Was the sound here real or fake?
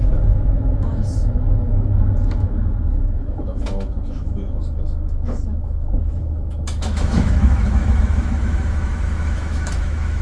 fake